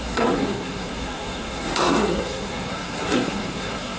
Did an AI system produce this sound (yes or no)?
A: yes